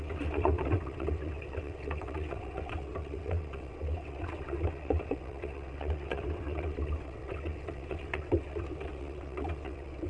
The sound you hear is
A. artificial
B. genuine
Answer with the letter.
A